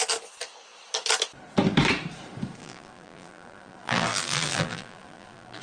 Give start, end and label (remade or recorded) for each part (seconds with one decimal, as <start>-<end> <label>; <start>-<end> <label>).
0.0-2.6 recorded; 2.6-5.6 remade